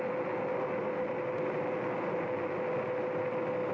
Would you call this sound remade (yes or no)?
no